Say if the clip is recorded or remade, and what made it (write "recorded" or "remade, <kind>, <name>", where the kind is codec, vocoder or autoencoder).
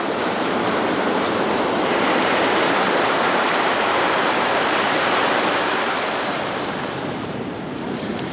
remade, vocoder, BigVGAN v2